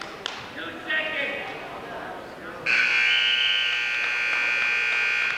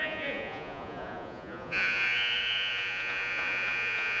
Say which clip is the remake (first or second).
second